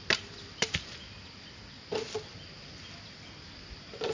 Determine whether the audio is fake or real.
real